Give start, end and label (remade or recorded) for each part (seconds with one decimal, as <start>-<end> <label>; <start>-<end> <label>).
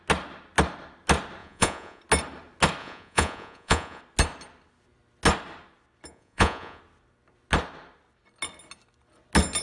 0.0-1.4 recorded; 1.4-2.0 remade; 2.0-2.8 recorded; 2.8-4.0 remade; 4.0-6.1 recorded; 6.1-6.8 remade; 6.8-9.6 recorded